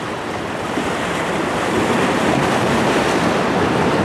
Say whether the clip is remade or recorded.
recorded